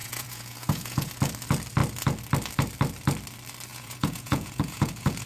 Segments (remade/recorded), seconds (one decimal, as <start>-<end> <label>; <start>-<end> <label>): 0.0-1.1 remade; 1.1-3.7 recorded; 3.7-5.3 remade